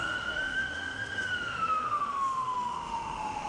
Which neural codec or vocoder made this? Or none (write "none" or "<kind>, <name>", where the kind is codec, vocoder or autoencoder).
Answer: autoencoder, DAC-VAE